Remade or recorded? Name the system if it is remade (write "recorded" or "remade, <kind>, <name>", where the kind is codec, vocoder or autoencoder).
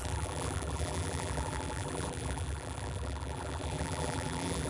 remade, vocoder, BigVGAN v2